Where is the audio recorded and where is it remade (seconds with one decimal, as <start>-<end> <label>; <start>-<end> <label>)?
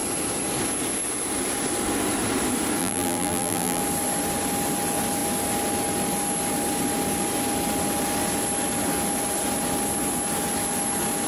0.0-2.8 recorded; 2.8-3.8 remade; 3.8-11.3 recorded